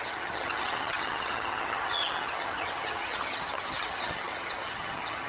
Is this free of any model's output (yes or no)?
no